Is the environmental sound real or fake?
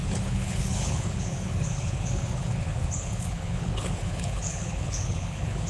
fake